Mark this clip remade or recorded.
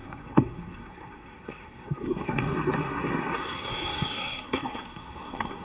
remade